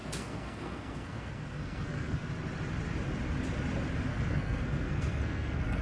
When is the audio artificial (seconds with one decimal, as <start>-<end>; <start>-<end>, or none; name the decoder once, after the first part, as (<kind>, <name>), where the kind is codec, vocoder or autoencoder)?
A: 0.0-2.3 (codec, SNAC); 4.1-5.8